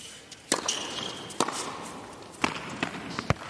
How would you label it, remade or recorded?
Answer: recorded